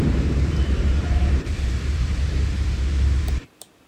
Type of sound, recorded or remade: remade